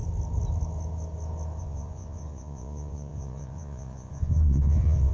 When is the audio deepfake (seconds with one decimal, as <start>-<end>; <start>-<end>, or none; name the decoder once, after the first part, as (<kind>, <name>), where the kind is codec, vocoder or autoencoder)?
1.6-5.1 (vocoder, Vocos)